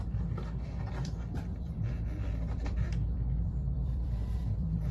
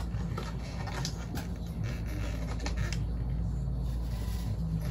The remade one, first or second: first